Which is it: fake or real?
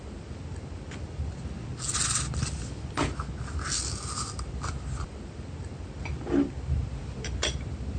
real